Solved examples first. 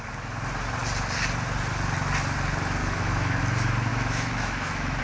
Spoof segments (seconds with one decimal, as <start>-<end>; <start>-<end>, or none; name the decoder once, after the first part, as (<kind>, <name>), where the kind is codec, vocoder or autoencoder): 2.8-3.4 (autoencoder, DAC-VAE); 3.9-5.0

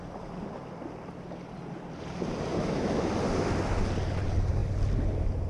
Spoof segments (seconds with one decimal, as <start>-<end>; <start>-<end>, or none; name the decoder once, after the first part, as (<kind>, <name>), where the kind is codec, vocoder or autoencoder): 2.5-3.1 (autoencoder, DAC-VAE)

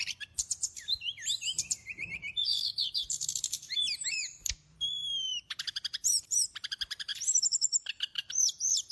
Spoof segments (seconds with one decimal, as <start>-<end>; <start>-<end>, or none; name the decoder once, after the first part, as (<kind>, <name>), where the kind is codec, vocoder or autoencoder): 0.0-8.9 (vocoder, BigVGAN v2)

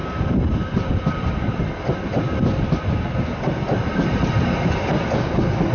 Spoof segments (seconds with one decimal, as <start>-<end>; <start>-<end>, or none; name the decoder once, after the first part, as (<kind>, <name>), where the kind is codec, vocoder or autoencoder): none